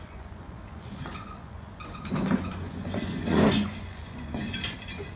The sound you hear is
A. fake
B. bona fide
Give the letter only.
A